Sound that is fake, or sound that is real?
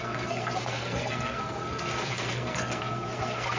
fake